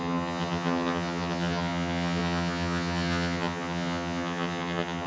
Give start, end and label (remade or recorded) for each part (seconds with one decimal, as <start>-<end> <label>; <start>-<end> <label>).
0.0-5.1 remade